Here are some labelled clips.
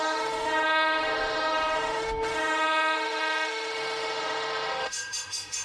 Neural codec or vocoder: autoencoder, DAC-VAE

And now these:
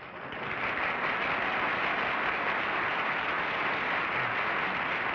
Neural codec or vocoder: none